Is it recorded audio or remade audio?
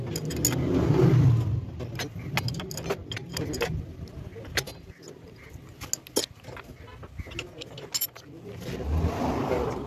recorded